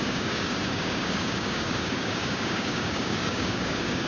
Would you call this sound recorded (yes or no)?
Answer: no